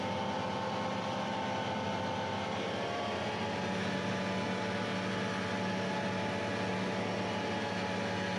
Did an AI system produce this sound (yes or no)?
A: no